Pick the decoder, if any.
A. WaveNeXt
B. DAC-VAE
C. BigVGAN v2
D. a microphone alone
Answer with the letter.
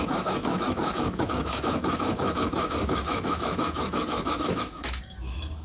B